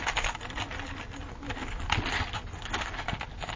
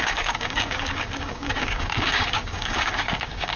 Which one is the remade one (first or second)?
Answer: second